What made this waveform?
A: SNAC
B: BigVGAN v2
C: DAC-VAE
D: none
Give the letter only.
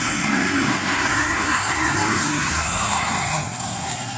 A